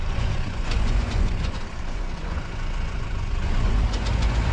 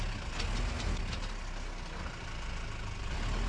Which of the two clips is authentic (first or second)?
second